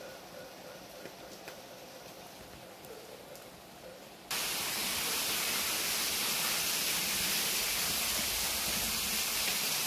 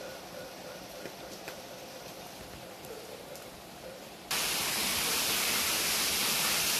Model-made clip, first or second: second